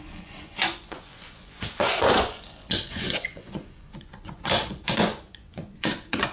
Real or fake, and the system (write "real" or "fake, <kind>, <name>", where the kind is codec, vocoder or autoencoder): fake, vocoder, Vocos